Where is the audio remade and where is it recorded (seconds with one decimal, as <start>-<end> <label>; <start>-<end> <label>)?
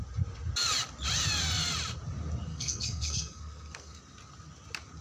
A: 0.0-2.5 recorded; 2.5-4.0 remade; 4.0-5.0 recorded